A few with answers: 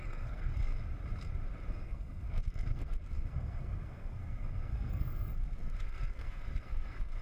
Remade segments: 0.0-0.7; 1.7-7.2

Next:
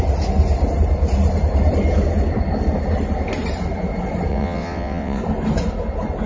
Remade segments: 4.3-5.2

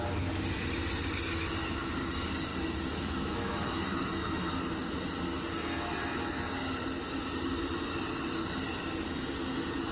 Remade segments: 2.5-4.6

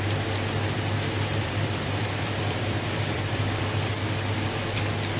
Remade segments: 1.3-3.9

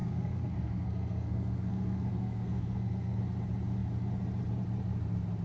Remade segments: 0.0-3.2